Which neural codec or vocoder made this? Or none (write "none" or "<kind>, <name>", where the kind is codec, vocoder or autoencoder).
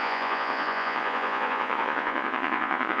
vocoder, Vocos